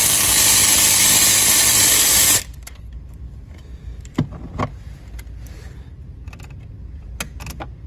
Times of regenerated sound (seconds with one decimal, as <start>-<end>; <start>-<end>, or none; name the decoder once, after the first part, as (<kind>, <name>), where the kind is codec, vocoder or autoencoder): 0.0-3.8 (vocoder, BigVGAN v2)